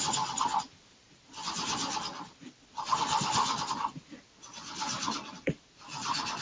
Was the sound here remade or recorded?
recorded